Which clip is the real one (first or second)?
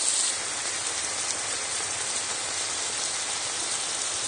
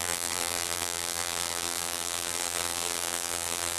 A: first